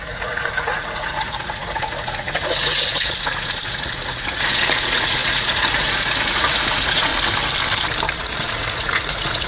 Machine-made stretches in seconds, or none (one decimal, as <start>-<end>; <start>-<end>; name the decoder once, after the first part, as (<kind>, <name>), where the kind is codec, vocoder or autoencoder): 0.0-7.1 (vocoder, Vocos); 8.2-9.5